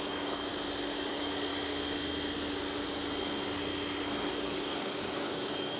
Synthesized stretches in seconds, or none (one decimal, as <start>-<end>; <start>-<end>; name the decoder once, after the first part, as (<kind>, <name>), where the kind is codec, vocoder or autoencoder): 0.0-0.5 (codec, DAC); 1.1-1.5; 4.3-5.8